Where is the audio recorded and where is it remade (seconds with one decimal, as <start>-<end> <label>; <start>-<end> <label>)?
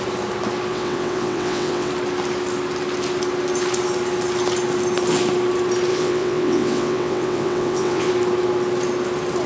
0.0-0.7 recorded; 0.7-1.9 remade; 1.9-5.9 recorded; 5.9-8.1 remade; 8.1-9.5 recorded